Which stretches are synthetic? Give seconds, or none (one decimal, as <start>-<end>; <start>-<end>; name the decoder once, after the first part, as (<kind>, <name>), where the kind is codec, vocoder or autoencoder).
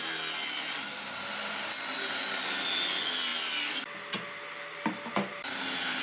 none